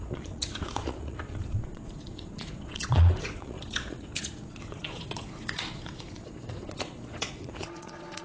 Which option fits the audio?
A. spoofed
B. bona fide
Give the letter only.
A